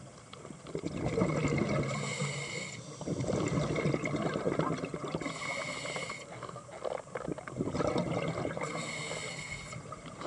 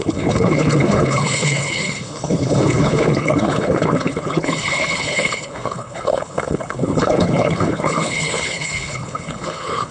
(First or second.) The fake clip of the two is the second